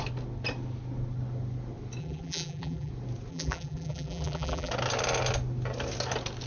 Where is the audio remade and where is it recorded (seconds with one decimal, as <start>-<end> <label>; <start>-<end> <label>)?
0.0-2.0 recorded; 2.0-2.9 remade; 2.9-3.3 recorded; 3.3-4.7 remade; 4.7-6.5 recorded